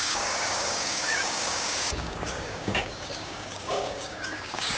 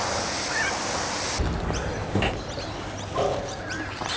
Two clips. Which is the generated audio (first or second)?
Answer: first